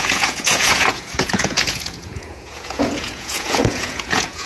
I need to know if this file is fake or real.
fake